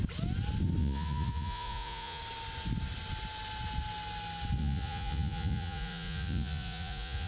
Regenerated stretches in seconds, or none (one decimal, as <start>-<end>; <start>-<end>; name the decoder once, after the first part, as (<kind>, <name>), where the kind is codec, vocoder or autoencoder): 0.8-2.2 (vocoder, Vocos); 4.6-7.3